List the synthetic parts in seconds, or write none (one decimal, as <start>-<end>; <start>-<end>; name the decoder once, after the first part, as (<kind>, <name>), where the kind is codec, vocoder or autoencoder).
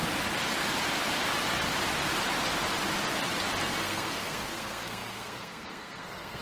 3.8-6.4 (codec, SNAC)